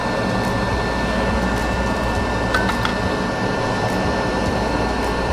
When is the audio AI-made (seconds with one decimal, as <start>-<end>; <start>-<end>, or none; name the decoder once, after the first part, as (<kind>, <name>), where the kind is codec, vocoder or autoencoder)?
1.6-2.2 (vocoder, BigVGAN v2)